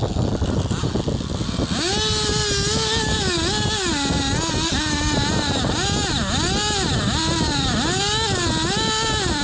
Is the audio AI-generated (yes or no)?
no